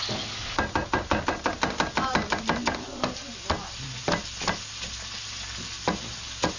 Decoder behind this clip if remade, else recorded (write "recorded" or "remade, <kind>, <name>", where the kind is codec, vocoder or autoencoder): recorded